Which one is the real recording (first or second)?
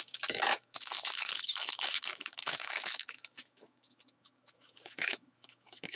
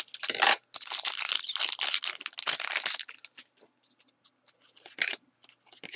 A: second